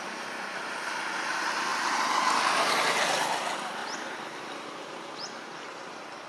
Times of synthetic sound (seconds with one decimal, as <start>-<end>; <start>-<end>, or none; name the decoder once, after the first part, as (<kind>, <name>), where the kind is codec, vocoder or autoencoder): none